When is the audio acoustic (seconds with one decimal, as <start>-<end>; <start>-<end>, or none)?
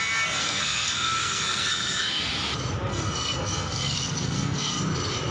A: 0.0-0.4; 2.3-2.9; 4.8-5.3